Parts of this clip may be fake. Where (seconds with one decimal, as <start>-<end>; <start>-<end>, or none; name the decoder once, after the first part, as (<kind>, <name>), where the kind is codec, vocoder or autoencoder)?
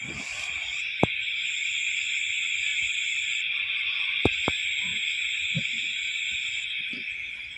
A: 0.0-4.9 (vocoder, BigVGAN v2)